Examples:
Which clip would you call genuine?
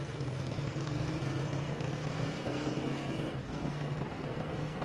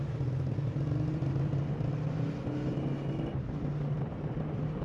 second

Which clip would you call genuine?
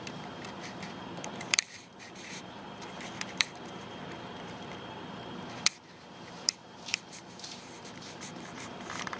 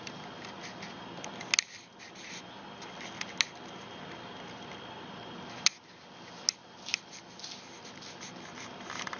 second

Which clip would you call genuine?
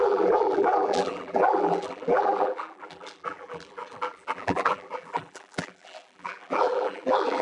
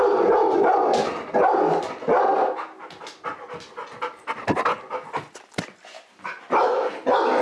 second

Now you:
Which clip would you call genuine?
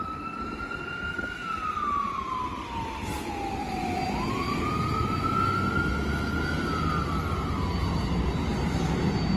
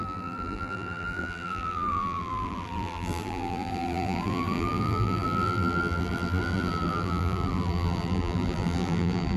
first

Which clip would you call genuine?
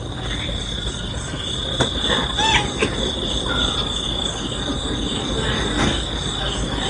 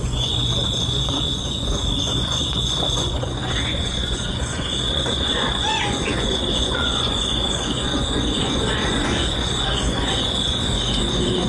first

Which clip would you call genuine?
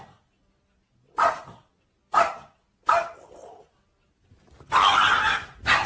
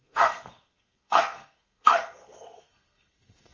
first